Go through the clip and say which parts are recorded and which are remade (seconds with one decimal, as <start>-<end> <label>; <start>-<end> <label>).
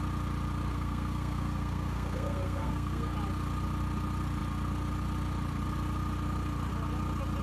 0.0-0.7 recorded; 0.7-3.1 remade; 3.1-7.4 recorded